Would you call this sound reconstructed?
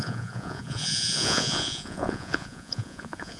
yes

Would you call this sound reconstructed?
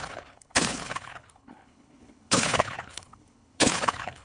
yes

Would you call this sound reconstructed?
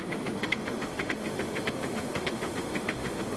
yes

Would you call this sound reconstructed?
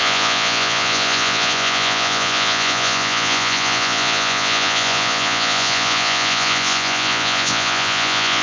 yes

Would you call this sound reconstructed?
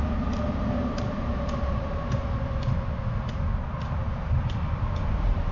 no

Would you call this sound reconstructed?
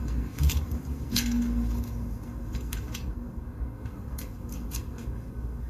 yes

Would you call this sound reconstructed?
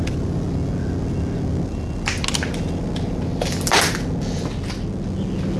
no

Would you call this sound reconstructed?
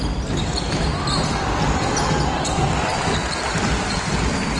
yes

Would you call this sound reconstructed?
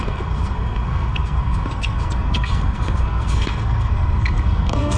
yes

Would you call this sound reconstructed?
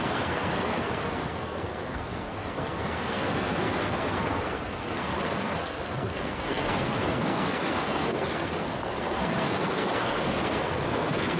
yes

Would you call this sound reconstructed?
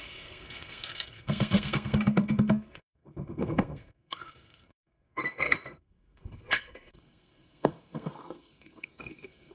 yes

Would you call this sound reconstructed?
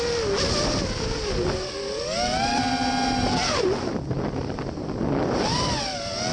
no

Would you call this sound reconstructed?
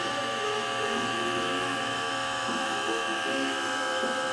yes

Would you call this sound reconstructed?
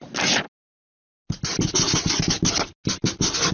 no